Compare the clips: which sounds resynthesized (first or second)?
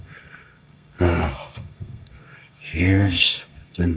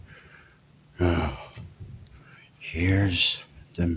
first